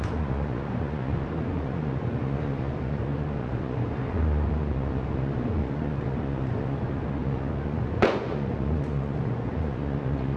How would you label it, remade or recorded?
remade